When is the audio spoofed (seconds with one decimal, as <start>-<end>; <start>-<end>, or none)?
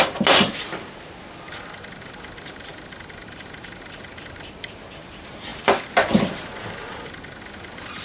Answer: none